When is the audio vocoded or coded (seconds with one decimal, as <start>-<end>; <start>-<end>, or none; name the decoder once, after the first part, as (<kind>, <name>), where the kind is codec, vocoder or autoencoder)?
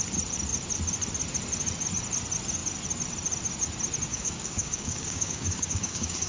4.1-6.3 (codec, DAC)